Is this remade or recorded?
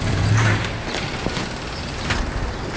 recorded